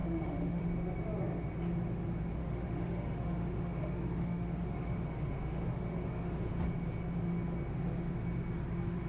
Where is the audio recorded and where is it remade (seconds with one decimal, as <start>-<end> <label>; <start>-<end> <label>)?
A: 0.0-0.6 remade; 0.6-2.4 recorded; 2.4-6.5 remade; 6.5-9.1 recorded